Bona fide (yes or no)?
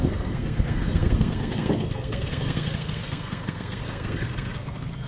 no